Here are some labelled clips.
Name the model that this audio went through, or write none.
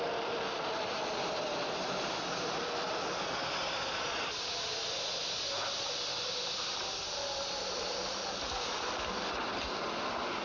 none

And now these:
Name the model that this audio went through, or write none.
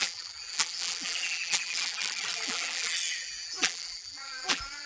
vocoder, BigVGAN v2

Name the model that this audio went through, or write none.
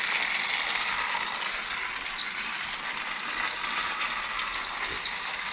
none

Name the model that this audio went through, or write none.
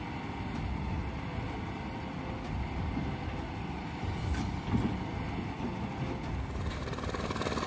none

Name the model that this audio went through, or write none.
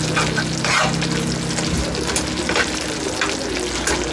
none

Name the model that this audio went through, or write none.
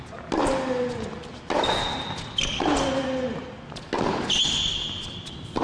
none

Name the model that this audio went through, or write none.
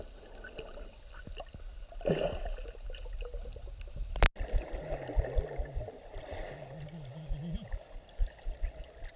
none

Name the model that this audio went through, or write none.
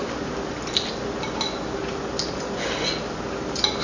none